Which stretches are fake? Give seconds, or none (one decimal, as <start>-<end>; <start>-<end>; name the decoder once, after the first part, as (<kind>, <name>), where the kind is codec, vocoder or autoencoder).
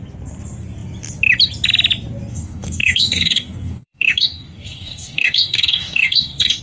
2.3-6.6 (codec, DAC)